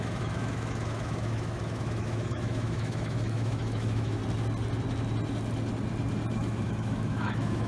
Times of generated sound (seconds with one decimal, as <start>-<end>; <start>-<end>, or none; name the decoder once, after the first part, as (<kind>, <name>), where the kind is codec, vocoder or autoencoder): 0.0-4.2 (autoencoder, DAC-VAE); 6.3-7.7